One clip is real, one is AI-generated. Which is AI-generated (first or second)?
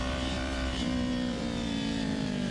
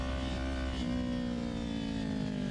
first